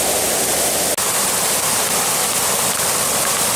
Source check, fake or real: real